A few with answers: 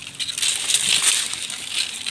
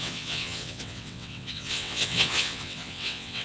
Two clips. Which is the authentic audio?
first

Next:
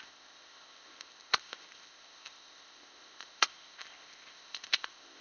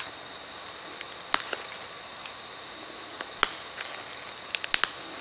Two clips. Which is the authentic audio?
second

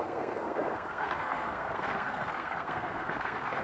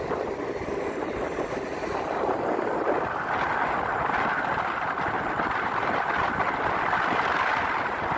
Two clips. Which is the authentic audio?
second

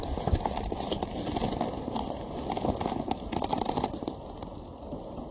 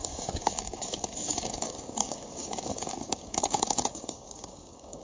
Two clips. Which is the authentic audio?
first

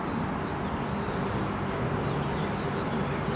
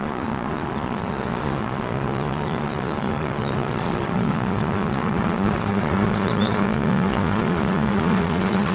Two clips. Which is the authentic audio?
first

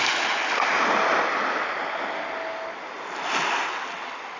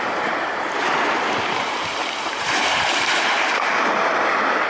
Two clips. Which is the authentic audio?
first